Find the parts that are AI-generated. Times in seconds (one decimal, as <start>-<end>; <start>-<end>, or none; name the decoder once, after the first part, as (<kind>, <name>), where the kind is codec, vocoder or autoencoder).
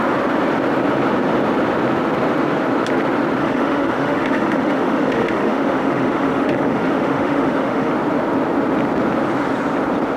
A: 3.4-7.9 (autoencoder, DAC-VAE)